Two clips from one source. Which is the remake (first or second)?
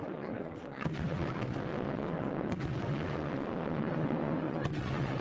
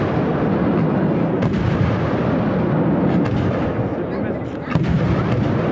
first